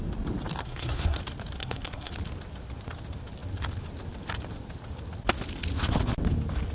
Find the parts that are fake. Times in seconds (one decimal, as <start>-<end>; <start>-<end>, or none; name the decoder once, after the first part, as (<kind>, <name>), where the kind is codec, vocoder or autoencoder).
0.6-1.2 (codec, SNAC); 1.6-2.1